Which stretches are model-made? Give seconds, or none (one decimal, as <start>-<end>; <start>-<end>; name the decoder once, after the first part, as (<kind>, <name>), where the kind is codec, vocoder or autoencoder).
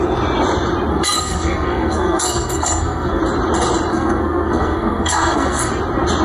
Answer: 0.9-3.2 (codec, SNAC); 3.9-5.7